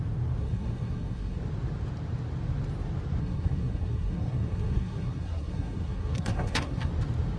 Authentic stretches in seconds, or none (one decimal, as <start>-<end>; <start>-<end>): 0.0-0.4; 1.4-3.2; 6.9-7.4